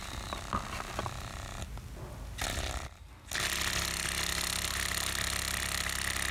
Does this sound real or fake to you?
real